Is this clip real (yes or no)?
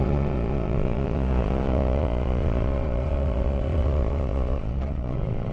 no